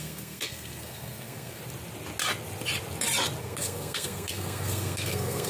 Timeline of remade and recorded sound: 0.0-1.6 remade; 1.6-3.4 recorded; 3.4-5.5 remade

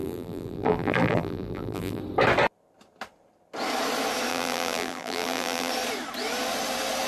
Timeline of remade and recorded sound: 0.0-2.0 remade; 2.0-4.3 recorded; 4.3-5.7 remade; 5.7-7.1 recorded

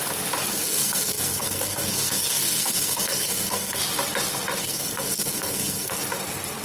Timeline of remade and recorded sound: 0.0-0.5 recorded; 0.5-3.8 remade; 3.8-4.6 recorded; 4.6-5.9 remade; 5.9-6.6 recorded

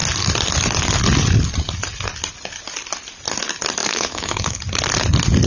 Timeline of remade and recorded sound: 0.0-3.8 recorded; 3.8-4.6 remade; 4.6-5.5 recorded